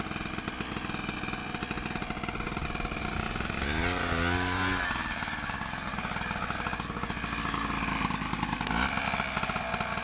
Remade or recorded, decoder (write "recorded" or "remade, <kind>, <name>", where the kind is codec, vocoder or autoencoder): recorded